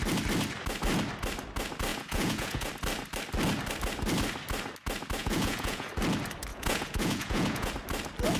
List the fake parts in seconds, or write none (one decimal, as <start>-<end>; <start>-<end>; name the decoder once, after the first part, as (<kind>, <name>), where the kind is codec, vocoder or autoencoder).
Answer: 1.9-2.7 (vocoder, Vocos); 5.2-5.9; 6.5-7.7